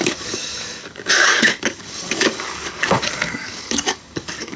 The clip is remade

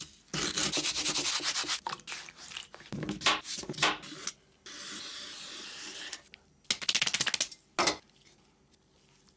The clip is recorded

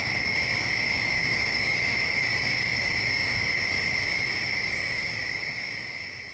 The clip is remade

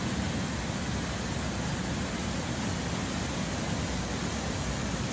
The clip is recorded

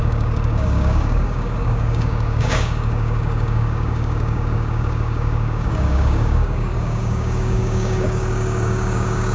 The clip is remade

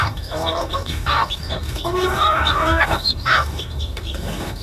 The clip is remade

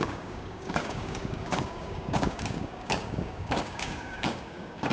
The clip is remade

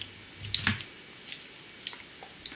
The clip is recorded